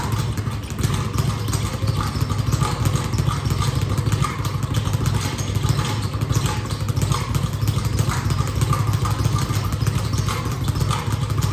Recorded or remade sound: recorded